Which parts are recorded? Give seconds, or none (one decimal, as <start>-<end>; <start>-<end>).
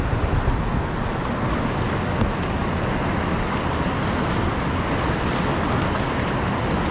0.0-6.9